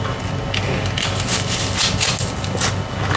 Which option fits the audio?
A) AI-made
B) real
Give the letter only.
B